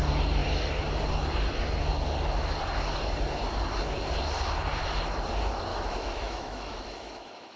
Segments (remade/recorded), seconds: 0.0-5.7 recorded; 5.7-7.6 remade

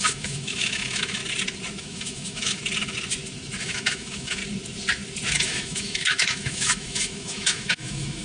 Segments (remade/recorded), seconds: 0.0-1.2 remade; 1.2-1.8 recorded; 1.8-2.6 remade; 2.6-3.6 recorded; 3.6-4.4 remade; 4.4-5.3 recorded; 5.3-8.2 remade

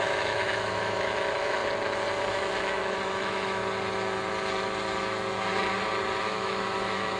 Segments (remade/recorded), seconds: 0.0-1.6 remade; 1.6-2.3 recorded; 2.3-3.6 remade; 3.6-6.2 recorded; 6.2-7.2 remade

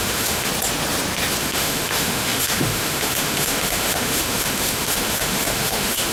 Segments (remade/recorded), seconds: 0.0-0.5 remade; 0.5-1.4 recorded; 1.4-6.1 remade

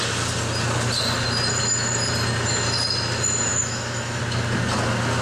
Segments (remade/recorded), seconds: 0.0-3.5 recorded; 3.5-4.2 remade; 4.2-5.2 recorded

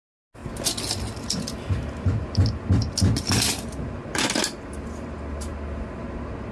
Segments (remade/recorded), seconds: 0.0-6.5 recorded

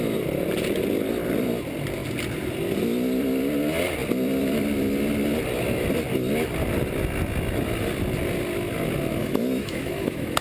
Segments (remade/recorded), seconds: 0.0-9.2 recorded; 9.2-10.4 remade

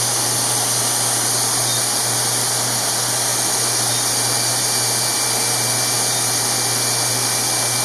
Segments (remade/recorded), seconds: 0.0-7.8 recorded